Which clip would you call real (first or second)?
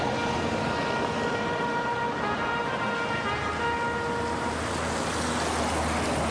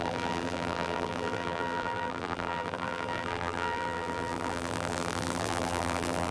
first